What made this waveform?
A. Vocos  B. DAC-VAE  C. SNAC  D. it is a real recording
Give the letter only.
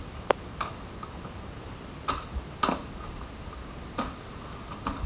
D